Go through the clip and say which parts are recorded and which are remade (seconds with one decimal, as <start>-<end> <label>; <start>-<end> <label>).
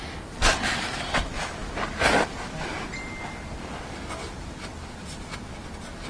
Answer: 0.0-6.1 recorded